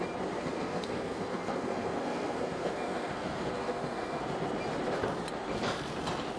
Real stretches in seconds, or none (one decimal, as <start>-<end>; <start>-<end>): 0.0-0.4; 4.2-6.4

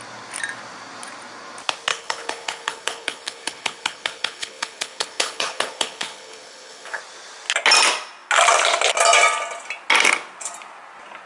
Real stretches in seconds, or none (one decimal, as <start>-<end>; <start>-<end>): 0.0-1.9; 7.0-11.3

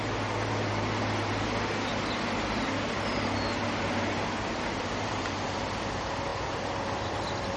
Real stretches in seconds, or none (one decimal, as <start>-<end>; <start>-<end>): 0.0-7.6

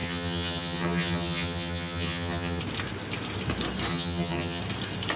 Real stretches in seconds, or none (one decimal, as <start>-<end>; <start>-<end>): 2.6-3.9; 4.6-5.2

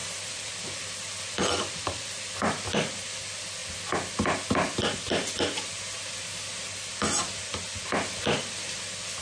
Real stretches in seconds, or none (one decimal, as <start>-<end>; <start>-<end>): 3.6-9.2

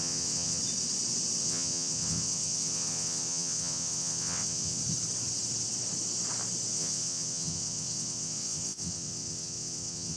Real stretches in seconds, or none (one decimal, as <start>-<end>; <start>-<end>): 0.6-1.4; 4.8-6.7

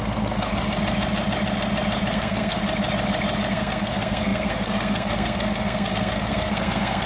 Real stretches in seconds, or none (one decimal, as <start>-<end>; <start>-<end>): 0.5-2.1; 2.6-3.5

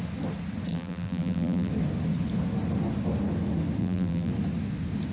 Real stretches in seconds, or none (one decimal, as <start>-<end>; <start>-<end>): 0.0-0.7; 1.7-3.8; 4.3-5.1